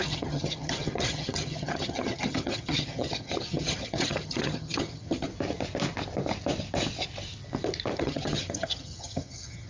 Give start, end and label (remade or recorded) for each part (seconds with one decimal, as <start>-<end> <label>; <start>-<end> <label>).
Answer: 0.0-5.3 remade; 5.3-8.0 recorded; 8.0-9.7 remade